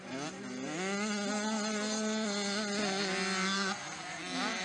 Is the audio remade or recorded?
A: recorded